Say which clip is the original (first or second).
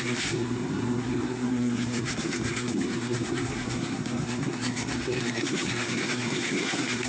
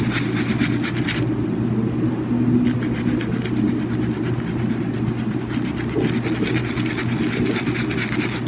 second